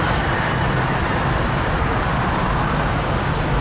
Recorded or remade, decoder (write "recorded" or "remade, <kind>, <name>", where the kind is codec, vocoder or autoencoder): recorded